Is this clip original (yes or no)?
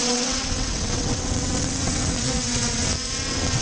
no